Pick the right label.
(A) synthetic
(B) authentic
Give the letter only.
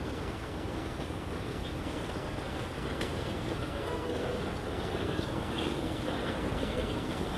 A